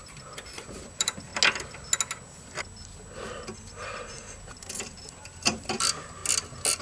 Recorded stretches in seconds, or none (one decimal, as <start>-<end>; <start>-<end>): 1.3-4.5; 6.2-6.8